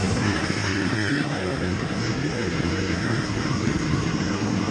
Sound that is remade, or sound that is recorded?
remade